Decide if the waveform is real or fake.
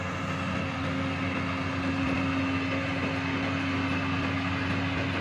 real